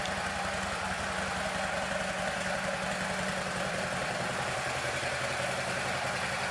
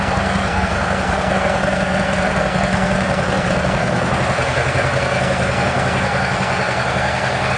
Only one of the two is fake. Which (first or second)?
second